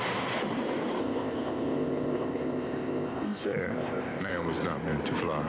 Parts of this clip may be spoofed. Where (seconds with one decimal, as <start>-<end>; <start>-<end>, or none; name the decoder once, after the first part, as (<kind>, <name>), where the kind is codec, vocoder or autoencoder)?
1.0-4.3 (codec, ZipCodec)